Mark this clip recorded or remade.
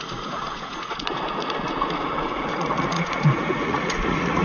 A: remade